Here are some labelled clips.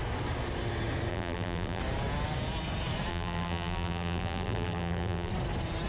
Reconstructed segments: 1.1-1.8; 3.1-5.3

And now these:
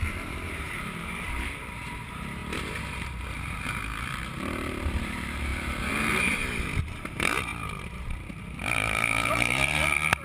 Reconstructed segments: 0.0-10.2